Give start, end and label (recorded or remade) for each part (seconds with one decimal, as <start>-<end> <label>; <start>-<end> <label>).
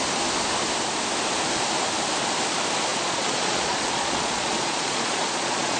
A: 0.0-2.9 recorded; 2.9-5.8 remade